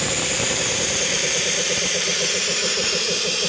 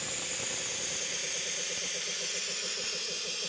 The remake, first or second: first